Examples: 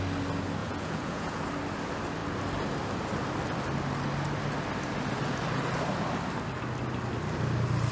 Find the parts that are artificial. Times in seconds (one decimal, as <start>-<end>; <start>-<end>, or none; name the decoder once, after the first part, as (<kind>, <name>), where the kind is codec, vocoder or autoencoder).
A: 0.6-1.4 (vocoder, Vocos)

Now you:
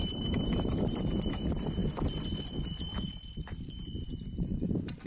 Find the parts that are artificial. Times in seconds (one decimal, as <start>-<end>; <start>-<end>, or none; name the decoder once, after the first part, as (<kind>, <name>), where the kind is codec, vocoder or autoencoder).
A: 0.0-1.8 (vocoder, BigVGAN v2); 4.0-5.1

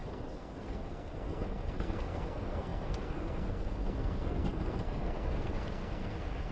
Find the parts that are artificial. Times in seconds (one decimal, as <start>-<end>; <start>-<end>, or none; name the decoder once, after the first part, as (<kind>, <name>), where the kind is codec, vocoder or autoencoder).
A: 0.0-6.5 (codec, SNAC)

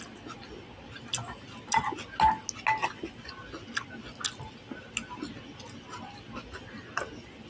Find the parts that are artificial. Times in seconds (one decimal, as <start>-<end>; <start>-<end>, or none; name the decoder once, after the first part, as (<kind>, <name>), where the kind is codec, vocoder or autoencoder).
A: none